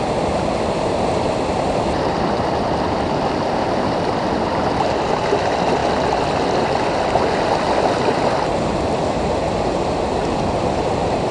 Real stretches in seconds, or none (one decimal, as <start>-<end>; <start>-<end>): 0.0-11.3